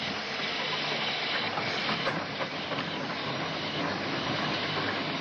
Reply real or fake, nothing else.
real